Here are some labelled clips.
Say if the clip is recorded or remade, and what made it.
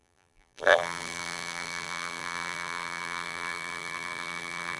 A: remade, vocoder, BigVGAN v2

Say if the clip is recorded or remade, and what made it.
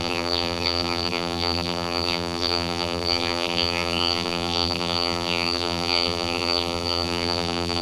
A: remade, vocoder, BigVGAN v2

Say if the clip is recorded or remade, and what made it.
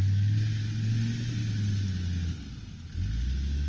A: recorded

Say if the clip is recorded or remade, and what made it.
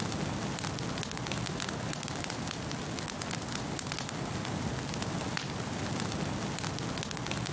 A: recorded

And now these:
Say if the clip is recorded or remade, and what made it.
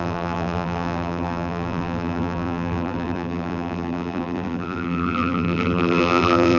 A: remade, vocoder, BigVGAN v2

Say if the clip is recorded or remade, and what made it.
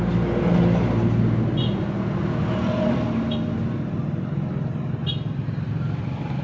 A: recorded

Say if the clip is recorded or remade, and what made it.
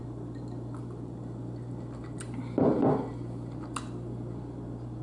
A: recorded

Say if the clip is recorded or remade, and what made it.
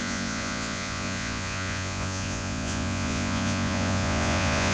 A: remade, vocoder, Vocos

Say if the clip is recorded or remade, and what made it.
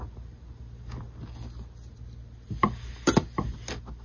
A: recorded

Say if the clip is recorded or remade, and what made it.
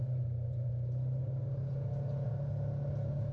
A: recorded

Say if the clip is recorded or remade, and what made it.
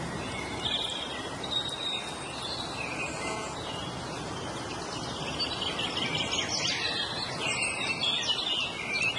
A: recorded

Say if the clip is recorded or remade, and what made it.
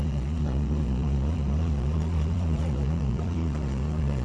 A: remade, vocoder, Vocos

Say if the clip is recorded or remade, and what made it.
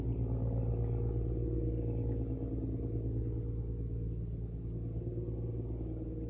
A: recorded